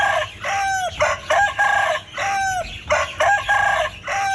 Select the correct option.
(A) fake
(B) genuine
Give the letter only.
B